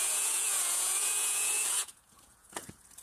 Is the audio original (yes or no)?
no